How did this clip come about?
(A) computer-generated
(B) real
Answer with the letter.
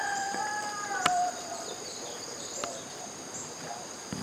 A